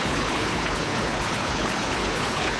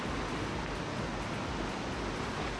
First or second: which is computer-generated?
first